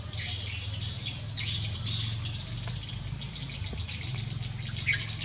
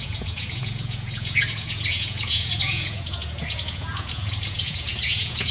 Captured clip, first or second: first